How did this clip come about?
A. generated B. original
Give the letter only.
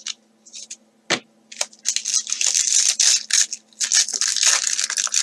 B